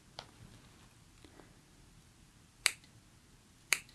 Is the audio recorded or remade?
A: recorded